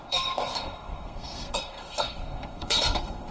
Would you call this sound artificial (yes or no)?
yes